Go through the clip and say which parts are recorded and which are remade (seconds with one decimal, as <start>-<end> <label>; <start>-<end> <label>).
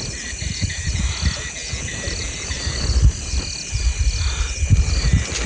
0.0-5.5 recorded